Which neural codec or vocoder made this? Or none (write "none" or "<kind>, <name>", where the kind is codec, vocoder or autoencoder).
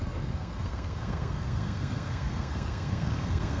codec, SNAC